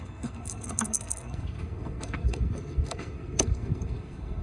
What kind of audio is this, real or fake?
fake